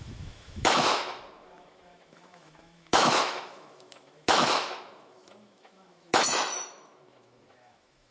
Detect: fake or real fake